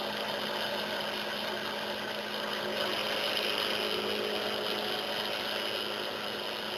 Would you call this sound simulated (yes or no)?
no